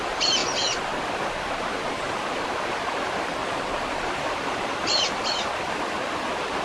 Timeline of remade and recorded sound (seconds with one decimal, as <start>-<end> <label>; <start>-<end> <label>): 0.0-6.6 recorded

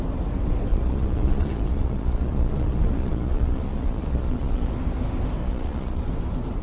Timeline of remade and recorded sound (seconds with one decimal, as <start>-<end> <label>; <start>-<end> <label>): 0.0-0.7 recorded; 0.7-4.7 remade; 4.7-5.4 recorded; 5.4-6.0 remade; 6.0-6.6 recorded

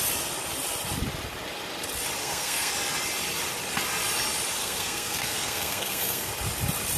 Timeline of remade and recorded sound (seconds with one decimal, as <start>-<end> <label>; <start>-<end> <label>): 0.0-2.2 recorded; 2.2-2.7 remade; 2.7-4.6 recorded; 4.6-6.3 remade; 6.3-7.0 recorded

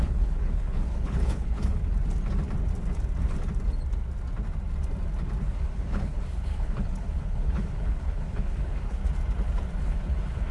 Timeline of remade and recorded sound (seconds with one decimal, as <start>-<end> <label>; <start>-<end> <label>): 0.0-1.8 remade; 1.8-5.4 recorded; 5.4-9.0 remade; 9.0-9.8 recorded; 9.8-10.5 remade

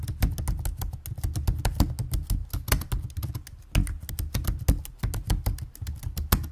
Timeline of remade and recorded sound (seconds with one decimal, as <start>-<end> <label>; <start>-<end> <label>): 0.0-6.5 recorded

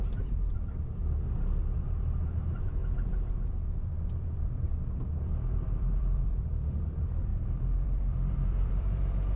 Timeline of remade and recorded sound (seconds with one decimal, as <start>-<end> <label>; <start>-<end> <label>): 0.0-1.0 remade; 1.0-1.6 recorded; 1.6-2.8 remade; 2.8-3.5 recorded; 3.5-9.4 remade